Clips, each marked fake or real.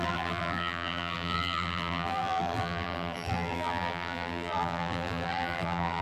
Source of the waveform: fake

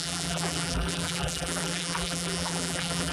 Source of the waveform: fake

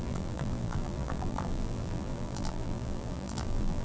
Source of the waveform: fake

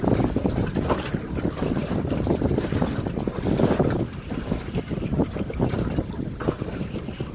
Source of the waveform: real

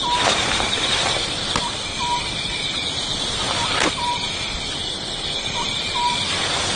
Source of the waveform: fake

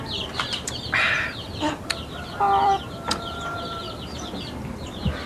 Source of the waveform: fake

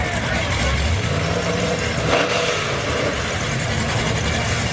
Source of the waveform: real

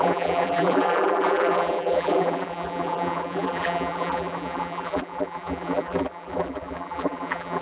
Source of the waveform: fake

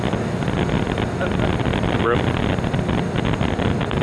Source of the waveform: real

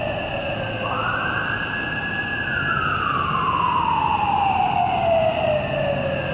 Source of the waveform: real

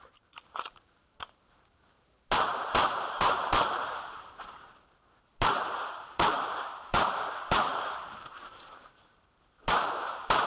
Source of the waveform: fake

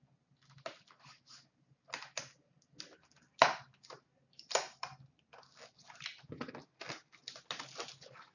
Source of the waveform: real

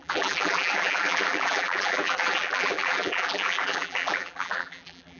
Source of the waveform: fake